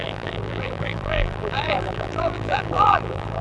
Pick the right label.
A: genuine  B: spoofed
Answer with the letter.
B